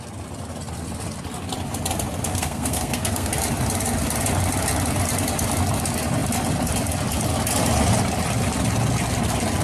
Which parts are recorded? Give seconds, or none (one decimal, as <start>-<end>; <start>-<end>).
0.0-2.3; 3.3-9.6